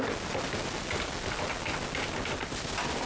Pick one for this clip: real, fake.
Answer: real